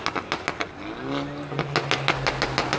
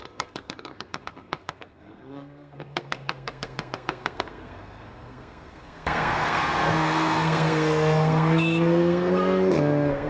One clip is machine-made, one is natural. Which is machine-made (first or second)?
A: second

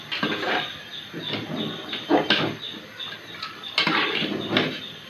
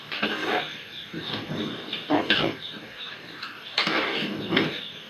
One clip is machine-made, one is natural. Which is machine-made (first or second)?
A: second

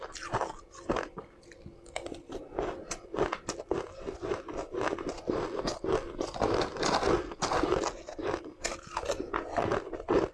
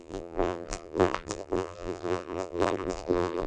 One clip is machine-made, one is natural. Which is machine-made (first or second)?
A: second